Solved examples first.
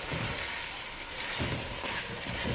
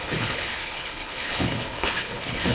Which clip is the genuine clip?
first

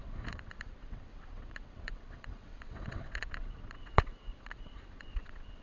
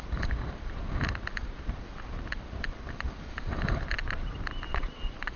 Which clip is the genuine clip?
second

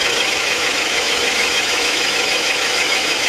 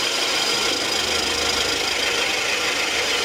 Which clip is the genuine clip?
second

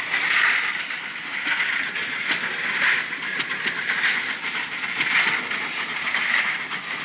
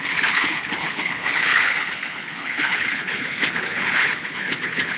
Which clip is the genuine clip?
first